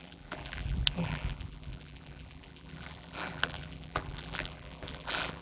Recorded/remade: remade